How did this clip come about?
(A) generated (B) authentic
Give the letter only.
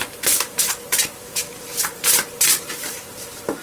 A